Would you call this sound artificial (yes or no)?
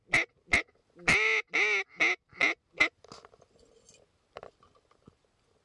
no